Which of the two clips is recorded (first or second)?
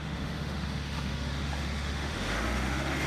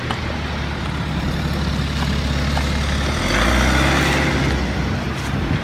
second